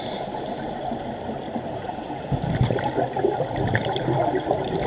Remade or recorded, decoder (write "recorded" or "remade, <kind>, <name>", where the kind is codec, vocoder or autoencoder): recorded